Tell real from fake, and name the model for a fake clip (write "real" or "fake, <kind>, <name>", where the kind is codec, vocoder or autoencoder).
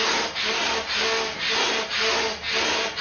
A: real